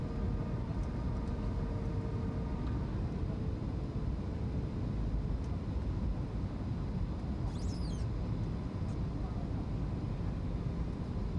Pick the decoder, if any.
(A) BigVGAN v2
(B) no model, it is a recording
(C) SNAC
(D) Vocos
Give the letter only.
B